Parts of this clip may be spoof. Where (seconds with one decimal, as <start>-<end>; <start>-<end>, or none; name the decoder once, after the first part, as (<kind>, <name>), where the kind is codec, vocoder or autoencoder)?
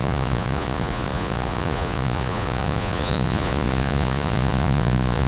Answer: 0.0-5.3 (vocoder, Vocos)